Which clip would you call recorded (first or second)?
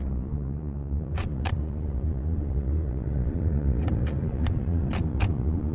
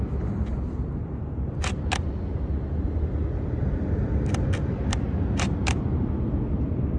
second